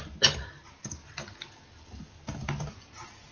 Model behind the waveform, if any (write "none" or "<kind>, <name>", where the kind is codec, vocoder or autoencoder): none